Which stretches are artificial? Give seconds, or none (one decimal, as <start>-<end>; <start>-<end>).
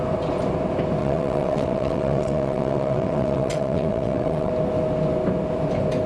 1.0-4.5